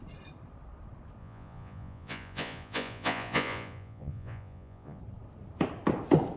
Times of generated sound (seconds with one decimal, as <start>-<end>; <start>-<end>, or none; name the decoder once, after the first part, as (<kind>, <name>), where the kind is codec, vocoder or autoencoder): 1.2-5.0 (vocoder, Vocos)